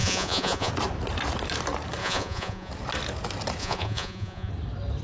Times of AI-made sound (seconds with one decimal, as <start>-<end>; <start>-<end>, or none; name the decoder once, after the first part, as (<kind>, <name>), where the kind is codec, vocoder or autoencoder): 0.0-0.7 (vocoder, Vocos); 2.0-2.7; 3.6-4.5